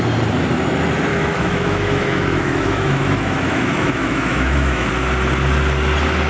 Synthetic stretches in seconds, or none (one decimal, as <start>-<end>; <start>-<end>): 1.1-4.9